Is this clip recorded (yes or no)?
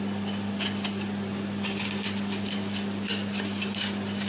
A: yes